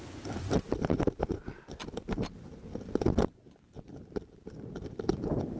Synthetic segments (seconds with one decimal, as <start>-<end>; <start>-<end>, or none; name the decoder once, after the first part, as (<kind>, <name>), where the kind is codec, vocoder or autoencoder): none